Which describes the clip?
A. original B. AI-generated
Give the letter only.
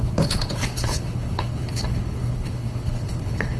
B